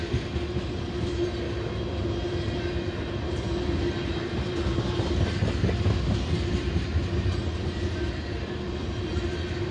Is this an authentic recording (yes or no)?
yes